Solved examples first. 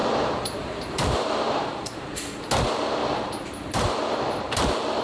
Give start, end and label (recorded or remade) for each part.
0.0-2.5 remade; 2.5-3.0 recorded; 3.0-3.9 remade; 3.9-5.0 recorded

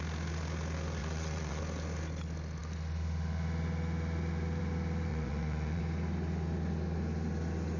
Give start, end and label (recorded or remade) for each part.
0.0-1.0 recorded; 1.0-1.6 remade; 1.6-5.1 recorded; 5.1-5.8 remade; 5.8-7.8 recorded

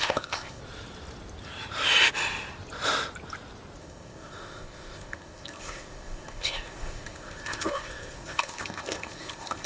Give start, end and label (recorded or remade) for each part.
0.0-0.6 remade; 0.6-3.8 recorded; 3.8-9.7 remade

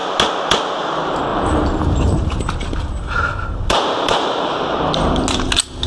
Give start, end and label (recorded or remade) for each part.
0.0-1.3 recorded; 1.3-4.8 remade; 4.8-5.9 recorded

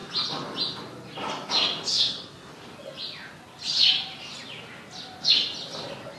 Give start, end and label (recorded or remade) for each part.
0.0-1.9 recorded; 1.9-2.5 remade; 2.5-6.2 recorded

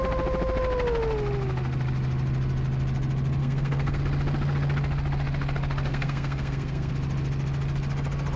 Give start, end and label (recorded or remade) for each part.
0.0-3.4 recorded; 3.4-4.0 remade; 4.0-5.9 recorded; 5.9-6.9 remade; 6.9-8.4 recorded

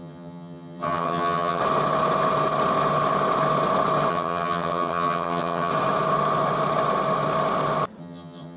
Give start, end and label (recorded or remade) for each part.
0.0-1.6 remade; 1.6-4.1 recorded; 4.1-5.7 remade; 5.7-8.0 recorded; 8.0-8.6 remade